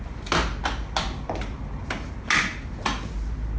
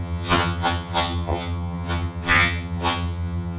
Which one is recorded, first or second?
first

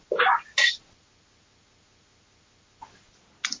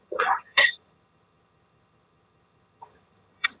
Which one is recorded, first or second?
first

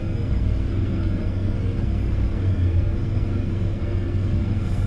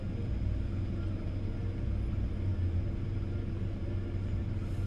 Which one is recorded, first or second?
second